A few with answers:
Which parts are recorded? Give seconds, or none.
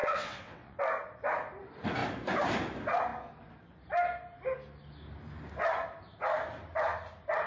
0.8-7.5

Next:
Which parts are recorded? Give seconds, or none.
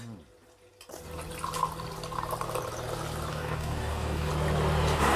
0.0-3.3; 4.3-5.2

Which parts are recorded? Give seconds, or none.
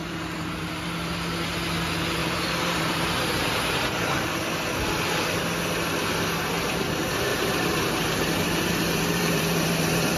0.7-2.2; 4.4-7.3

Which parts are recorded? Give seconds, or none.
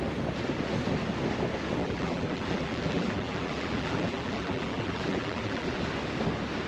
0.0-1.8; 5.8-6.7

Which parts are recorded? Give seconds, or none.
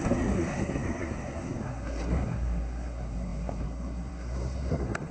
none